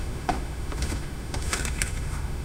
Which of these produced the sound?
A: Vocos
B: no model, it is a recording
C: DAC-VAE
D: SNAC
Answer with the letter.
C